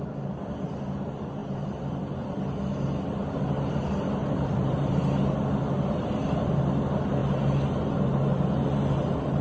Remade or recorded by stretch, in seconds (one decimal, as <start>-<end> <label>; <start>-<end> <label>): 0.0-4.2 recorded; 4.2-4.9 remade; 4.9-9.4 recorded